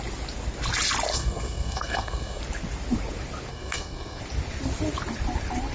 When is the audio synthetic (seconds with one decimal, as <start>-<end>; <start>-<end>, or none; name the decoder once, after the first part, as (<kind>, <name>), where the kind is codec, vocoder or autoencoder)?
1.1-2.4 (codec, SNAC); 3.5-4.2